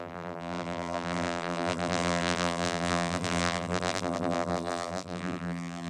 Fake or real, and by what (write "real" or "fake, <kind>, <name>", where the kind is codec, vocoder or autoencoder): fake, vocoder, BigVGAN v2